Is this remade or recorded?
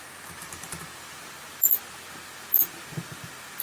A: recorded